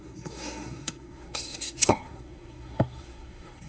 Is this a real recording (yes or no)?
no